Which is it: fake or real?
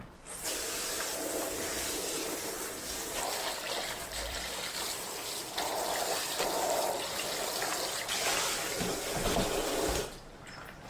fake